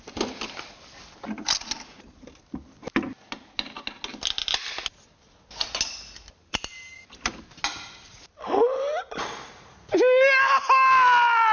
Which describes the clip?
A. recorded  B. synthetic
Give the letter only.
A